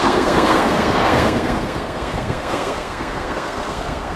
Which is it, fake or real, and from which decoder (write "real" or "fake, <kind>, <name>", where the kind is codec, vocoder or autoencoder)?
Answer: fake, codec, SNAC